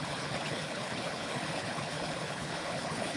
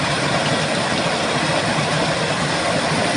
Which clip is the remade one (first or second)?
first